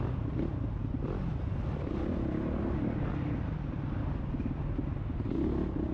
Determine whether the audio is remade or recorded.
recorded